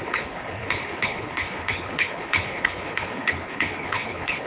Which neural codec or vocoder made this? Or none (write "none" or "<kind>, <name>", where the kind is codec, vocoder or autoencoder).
codec, HILCodec